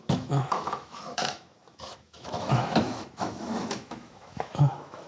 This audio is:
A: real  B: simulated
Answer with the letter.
B